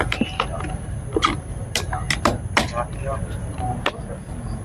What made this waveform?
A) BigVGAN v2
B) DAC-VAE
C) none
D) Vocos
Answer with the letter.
C